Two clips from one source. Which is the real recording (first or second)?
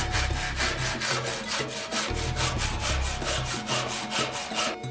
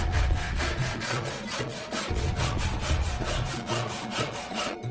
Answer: first